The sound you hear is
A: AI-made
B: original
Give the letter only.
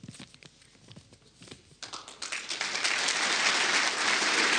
B